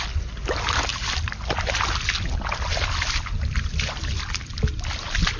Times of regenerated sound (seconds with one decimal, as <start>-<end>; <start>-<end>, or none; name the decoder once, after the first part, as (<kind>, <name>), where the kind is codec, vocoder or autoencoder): none